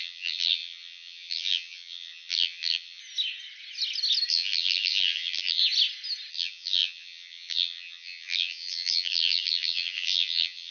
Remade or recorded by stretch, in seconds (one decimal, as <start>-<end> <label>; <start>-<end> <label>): 0.0-3.0 remade; 3.0-4.3 recorded; 4.3-5.6 remade; 5.6-6.3 recorded; 6.3-10.7 remade